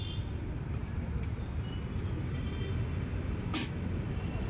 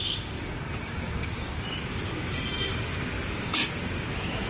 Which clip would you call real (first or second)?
first